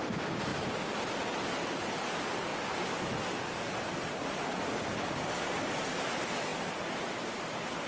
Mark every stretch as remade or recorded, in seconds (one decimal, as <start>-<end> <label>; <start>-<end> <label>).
0.0-7.9 recorded